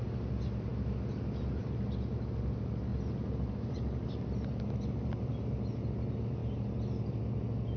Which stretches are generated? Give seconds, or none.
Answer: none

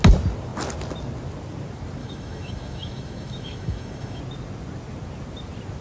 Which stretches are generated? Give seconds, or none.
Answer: 2.0-4.2 (autoencoder, DAC-VAE)

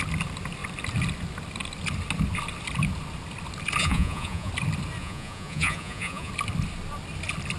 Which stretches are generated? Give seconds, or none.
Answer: 3.8-4.5 (vocoder, Vocos); 5.0-6.3